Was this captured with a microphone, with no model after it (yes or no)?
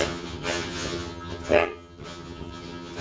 no